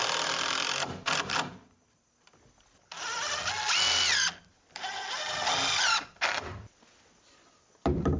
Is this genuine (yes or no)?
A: yes